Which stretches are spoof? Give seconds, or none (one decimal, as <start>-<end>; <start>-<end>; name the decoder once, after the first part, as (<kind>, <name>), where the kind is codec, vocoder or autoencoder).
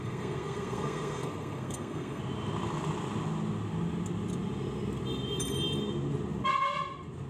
0.0-2.2 (codec, SNAC)